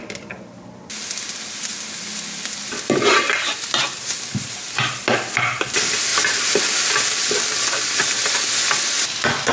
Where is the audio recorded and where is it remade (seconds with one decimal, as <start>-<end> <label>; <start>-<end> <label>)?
0.0-9.5 recorded